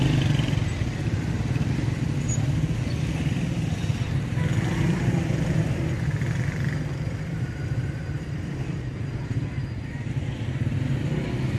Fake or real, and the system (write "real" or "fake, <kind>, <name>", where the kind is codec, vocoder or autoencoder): fake, vocoder, BigVGAN v2